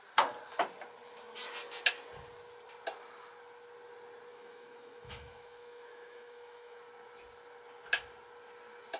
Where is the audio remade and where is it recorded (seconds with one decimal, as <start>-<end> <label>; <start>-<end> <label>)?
0.0-4.3 recorded; 4.3-6.8 remade; 6.8-9.0 recorded